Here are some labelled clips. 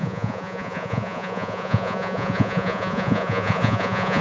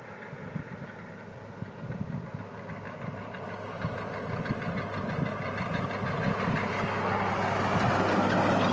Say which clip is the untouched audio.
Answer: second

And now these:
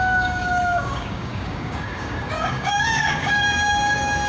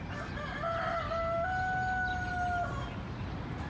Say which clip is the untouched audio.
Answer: second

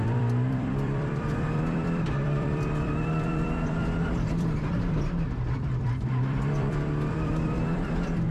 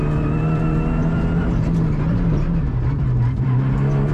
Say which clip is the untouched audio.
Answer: second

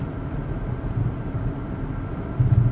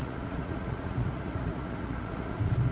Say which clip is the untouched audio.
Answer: first